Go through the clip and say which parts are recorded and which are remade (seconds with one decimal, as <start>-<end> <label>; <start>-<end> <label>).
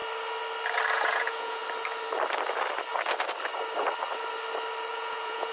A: 0.0-0.9 recorded; 0.9-1.6 remade; 1.6-4.9 recorded; 4.9-5.5 remade